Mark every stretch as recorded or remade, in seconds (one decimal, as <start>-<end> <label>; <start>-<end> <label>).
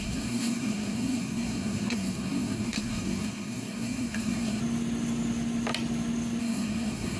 0.0-4.6 remade; 4.6-6.4 recorded; 6.4-7.2 remade